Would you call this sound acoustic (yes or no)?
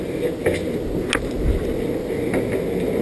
yes